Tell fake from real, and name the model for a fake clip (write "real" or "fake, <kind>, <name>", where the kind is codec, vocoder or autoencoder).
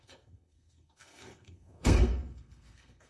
fake, codec, SNAC